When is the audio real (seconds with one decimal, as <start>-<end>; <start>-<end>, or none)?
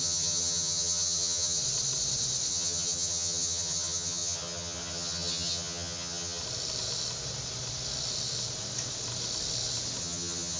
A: 1.6-2.5; 6.4-10.0